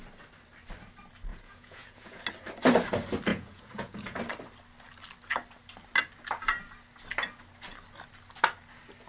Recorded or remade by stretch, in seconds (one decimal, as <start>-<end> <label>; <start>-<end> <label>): 0.0-1.3 recorded; 1.3-2.2 remade; 2.2-3.3 recorded; 3.3-4.2 remade; 4.2-9.1 recorded